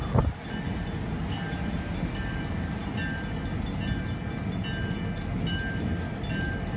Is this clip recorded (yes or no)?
yes